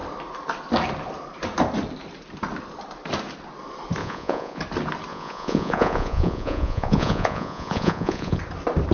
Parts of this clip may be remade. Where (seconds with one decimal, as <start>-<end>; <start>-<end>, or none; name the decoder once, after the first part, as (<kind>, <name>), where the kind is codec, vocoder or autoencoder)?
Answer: 4.0-4.6 (vocoder, Vocos); 5.1-8.4